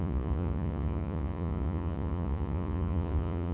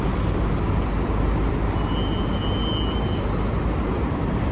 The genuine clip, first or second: second